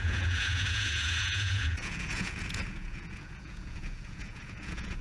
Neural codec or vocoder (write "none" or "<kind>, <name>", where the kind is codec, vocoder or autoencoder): vocoder, Vocos